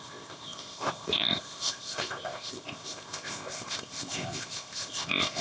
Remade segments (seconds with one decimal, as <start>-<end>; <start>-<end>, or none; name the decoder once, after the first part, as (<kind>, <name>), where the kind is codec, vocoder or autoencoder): 0.0-5.4 (codec, ZipCodec)